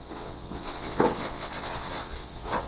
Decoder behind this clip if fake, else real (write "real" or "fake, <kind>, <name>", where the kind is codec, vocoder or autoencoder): fake, vocoder, WaveNeXt